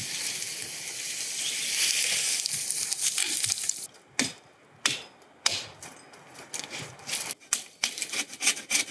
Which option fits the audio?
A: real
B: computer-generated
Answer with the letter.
A